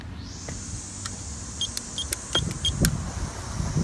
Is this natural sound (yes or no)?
yes